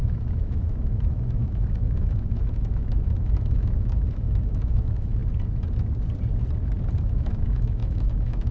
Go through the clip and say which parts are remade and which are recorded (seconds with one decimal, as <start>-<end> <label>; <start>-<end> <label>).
0.0-5.2 remade; 5.2-7.0 recorded; 7.0-8.5 remade